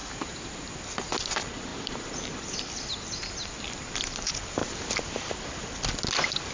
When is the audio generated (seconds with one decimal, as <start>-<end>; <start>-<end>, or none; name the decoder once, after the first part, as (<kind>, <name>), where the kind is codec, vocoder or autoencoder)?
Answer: 0.0-0.6 (vocoder, BigVGAN v2); 1.7-3.3; 4.6-5.4